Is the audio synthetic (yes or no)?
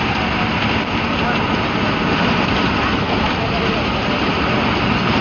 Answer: no